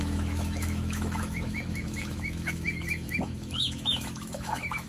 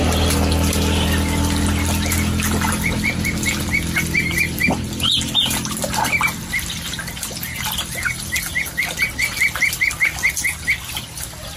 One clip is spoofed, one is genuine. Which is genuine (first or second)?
second